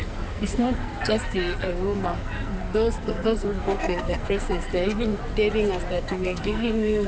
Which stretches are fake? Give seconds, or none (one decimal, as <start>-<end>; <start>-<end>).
0.0-5.2; 5.9-7.1